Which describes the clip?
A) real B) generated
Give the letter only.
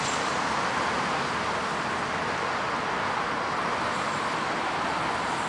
A